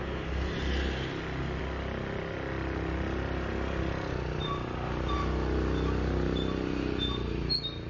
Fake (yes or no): no